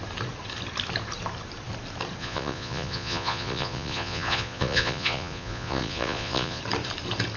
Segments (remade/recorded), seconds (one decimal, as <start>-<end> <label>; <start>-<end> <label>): 0.0-2.2 recorded; 2.2-6.6 remade; 6.6-7.4 recorded